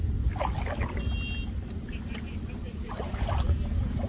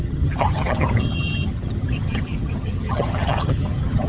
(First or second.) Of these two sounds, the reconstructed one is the second